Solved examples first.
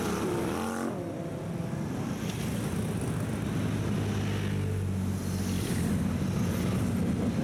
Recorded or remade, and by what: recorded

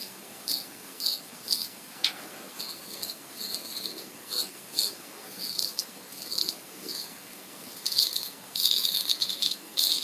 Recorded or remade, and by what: remade, codec, SNAC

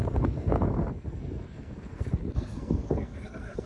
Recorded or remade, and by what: remade, codec, SNAC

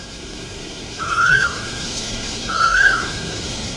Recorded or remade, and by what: remade, codec, SNAC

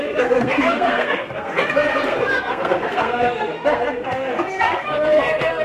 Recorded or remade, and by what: remade, codec, SNAC